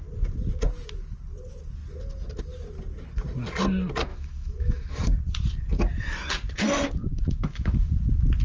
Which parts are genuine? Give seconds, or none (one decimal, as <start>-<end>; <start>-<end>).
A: 0.0-4.1; 5.0-7.0; 7.9-8.4